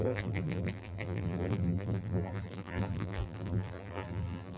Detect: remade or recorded remade